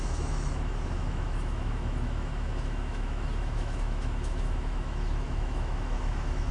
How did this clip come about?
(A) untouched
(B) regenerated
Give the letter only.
B